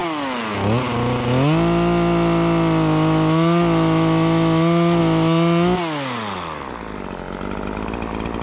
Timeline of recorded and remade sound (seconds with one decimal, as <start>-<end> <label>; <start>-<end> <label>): 0.0-8.4 recorded